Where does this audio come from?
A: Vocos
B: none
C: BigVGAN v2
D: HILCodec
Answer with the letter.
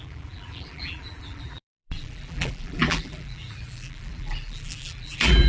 C